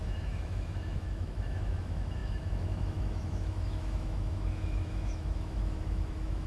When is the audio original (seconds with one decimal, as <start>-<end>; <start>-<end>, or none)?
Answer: none